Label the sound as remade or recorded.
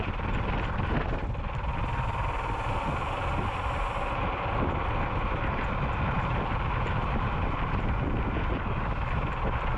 recorded